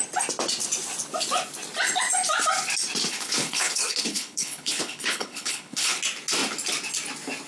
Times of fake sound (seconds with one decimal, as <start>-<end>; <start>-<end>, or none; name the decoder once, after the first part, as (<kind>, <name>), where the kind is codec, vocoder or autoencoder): 3.1-6.0 (codec, HILCodec)

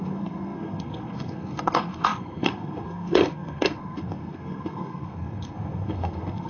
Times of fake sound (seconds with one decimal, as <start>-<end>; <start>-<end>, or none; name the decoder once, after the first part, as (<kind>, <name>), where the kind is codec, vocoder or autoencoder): 0.0-6.5 (codec, SNAC)

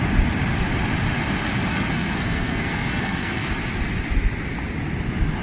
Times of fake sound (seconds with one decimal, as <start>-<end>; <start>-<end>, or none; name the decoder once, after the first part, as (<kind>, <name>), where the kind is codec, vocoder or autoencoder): 1.7-3.5 (codec, SNAC)